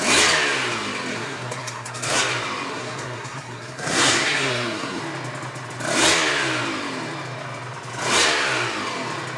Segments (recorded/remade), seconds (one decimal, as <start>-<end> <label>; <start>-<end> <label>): 0.0-1.1 recorded; 1.1-2.2 remade; 2.2-2.7 recorded; 2.7-5.0 remade; 5.0-9.4 recorded